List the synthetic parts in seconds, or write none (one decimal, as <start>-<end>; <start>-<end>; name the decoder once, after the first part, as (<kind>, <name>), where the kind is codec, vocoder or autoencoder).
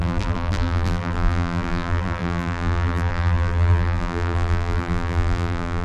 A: 0.0-5.8 (vocoder, BigVGAN v2)